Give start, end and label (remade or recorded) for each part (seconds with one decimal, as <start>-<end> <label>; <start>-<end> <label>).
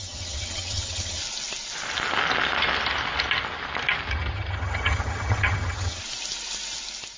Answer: 0.0-1.2 remade; 1.2-4.1 recorded; 4.1-6.0 remade; 6.0-7.2 recorded